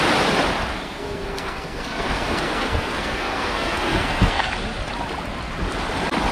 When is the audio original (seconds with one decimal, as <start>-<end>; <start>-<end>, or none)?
0.0-0.7; 4.5-6.3